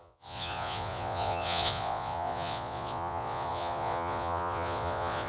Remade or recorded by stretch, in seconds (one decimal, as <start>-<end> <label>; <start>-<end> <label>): 0.0-5.3 remade